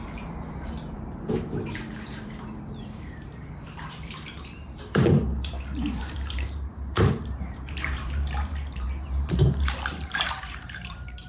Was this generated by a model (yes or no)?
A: yes